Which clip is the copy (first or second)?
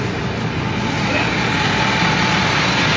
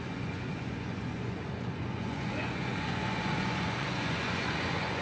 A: second